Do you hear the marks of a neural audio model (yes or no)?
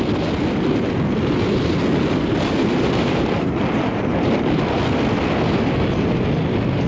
no